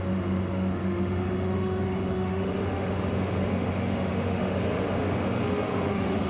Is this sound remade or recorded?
remade